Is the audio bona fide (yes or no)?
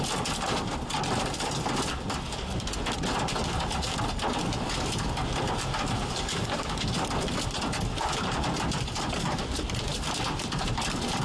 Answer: yes